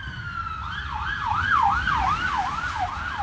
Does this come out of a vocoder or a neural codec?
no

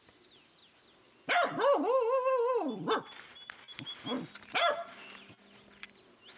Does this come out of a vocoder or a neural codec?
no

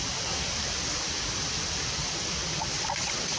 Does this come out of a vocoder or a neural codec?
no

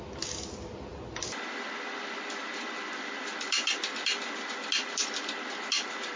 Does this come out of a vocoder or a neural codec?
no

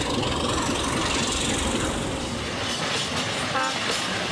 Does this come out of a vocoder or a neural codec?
yes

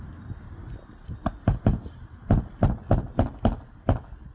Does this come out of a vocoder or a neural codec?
no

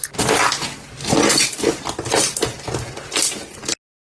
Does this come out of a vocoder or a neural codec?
no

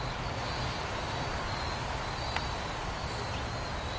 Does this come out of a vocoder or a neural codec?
no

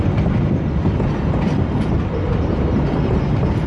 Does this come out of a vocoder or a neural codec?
no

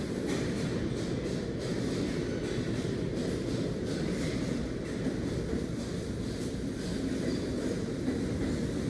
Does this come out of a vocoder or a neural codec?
no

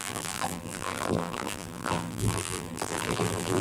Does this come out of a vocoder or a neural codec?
yes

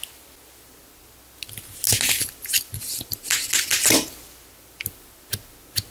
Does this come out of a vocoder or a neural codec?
no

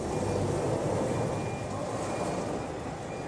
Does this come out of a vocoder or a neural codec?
no